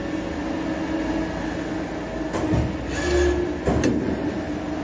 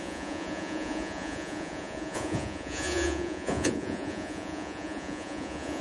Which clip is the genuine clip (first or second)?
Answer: first